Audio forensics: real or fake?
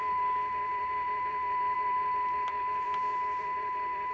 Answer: fake